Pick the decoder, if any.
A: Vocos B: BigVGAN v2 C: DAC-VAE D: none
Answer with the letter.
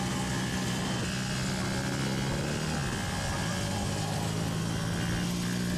D